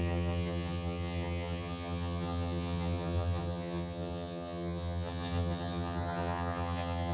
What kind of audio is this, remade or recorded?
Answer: remade